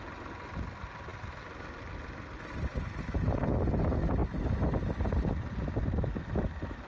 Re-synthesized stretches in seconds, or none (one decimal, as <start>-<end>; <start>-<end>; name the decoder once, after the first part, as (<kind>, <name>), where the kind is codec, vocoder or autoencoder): none